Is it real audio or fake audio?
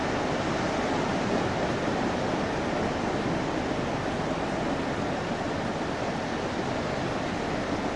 fake